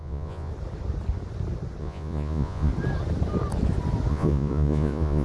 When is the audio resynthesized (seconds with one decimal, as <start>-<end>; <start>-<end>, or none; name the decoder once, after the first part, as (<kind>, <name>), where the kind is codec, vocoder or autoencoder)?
0.0-0.5 (vocoder, Vocos); 1.8-2.7; 4.1-5.2